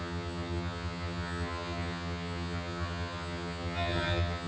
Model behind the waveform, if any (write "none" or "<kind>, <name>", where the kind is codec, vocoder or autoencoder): vocoder, HiFi-GAN